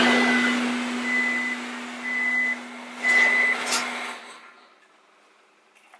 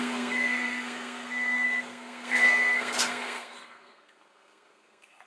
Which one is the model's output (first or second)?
second